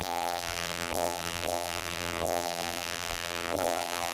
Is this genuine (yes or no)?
no